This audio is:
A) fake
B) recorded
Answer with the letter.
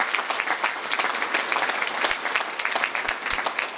B